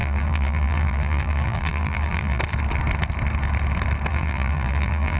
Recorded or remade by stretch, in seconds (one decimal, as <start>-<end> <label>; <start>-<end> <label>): 0.0-2.4 remade; 2.4-4.1 recorded; 4.1-5.2 remade